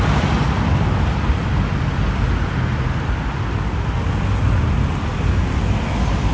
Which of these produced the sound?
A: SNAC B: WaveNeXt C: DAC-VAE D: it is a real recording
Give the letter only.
D